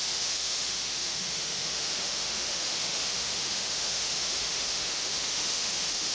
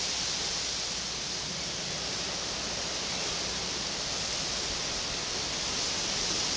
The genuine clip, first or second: second